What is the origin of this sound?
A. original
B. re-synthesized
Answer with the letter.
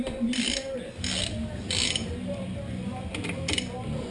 A